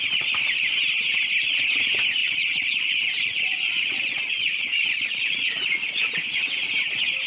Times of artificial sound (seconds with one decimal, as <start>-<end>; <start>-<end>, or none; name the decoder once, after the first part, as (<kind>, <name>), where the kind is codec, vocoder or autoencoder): 2.2-5.9 (vocoder, Vocos)